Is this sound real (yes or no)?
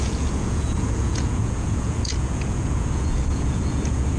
no